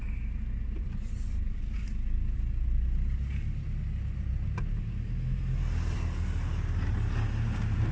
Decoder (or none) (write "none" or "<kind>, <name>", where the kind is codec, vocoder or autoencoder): none